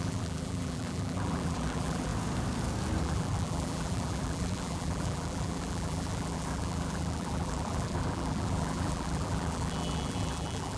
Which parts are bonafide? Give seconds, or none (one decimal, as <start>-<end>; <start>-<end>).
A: 2.1-3.0

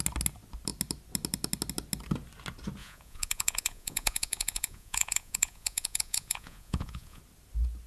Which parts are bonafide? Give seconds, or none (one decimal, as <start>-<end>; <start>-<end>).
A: 0.0-2.8; 7.2-7.9

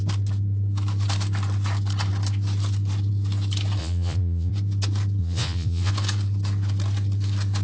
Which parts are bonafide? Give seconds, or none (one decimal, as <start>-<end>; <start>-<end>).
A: 0.0-3.8; 4.5-5.2; 5.9-7.6

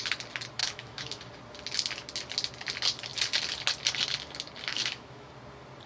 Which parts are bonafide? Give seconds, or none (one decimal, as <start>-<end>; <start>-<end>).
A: 0.0-0.6; 1.2-4.7; 5.3-5.9

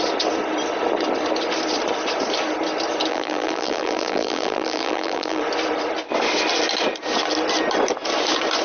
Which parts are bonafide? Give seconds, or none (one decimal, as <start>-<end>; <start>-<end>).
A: 0.0-3.1; 5.4-8.6